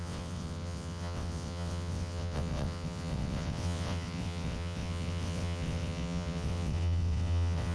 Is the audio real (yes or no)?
no